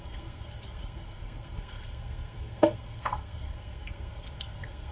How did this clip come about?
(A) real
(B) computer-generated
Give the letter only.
B